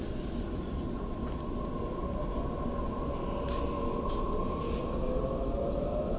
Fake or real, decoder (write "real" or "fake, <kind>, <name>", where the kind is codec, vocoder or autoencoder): real